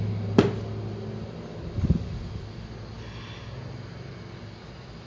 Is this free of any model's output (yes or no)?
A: yes